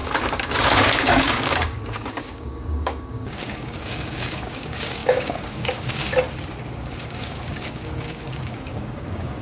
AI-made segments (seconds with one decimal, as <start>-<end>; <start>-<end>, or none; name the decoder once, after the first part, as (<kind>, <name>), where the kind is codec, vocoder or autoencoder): 0.0-6.1 (codec, DAC); 6.7-9.4